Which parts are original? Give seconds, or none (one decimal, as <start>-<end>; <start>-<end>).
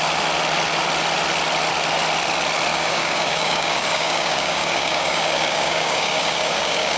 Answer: 0.0-2.7